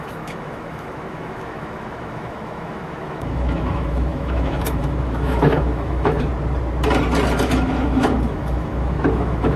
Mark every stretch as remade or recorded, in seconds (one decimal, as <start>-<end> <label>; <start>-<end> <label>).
0.0-6.3 remade; 6.3-7.4 recorded; 7.4-9.6 remade

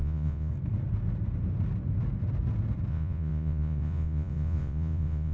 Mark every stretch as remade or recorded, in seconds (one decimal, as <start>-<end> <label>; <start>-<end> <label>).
0.0-0.5 remade; 0.5-2.9 recorded; 2.9-5.3 remade

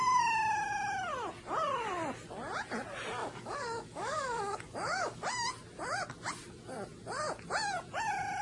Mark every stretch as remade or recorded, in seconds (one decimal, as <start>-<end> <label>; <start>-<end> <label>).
0.0-3.2 recorded; 3.2-5.2 remade; 5.2-8.4 recorded

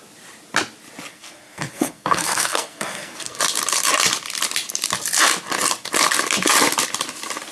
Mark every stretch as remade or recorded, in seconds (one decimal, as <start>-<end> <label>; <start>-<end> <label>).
0.0-1.1 recorded; 1.1-3.4 remade; 3.4-7.5 recorded